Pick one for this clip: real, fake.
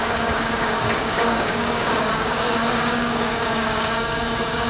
fake